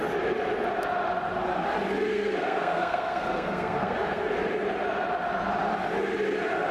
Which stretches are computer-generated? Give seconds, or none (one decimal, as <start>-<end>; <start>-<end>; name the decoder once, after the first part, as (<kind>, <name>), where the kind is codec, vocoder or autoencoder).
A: 2.1-4.3 (codec, SNAC)